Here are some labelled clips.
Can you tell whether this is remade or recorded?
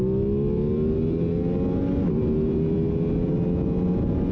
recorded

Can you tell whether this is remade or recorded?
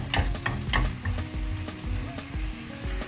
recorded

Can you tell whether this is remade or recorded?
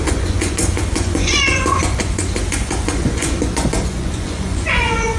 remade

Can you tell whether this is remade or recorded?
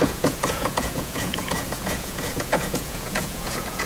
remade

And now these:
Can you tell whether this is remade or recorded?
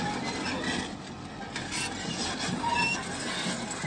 recorded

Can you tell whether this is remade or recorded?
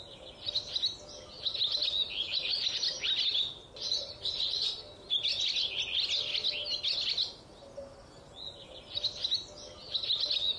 recorded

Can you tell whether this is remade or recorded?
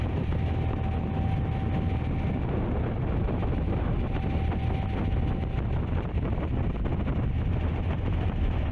recorded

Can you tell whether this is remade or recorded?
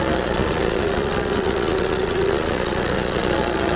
remade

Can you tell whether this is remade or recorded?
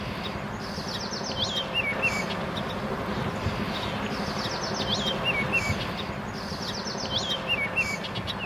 recorded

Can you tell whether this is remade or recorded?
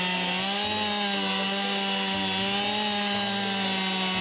recorded